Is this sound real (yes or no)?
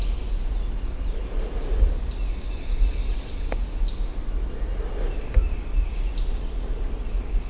yes